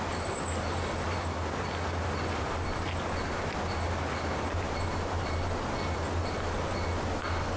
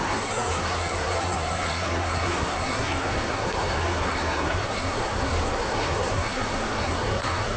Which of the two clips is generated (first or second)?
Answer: second